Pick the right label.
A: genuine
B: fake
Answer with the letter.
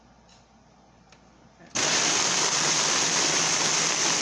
A